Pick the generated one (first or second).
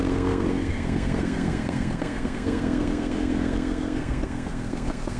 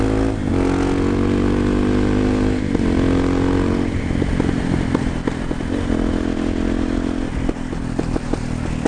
first